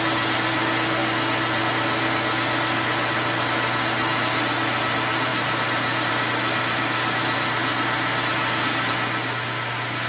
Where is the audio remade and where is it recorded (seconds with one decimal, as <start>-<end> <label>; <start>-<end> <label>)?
0.0-10.1 recorded